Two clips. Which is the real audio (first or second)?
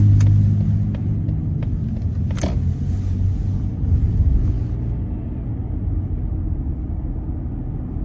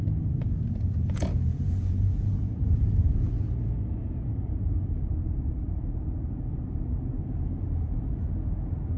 first